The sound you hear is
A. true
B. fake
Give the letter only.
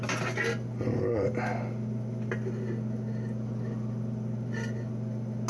A